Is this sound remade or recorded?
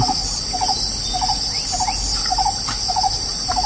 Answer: recorded